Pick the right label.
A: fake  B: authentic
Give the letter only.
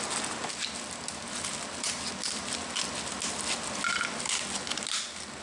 B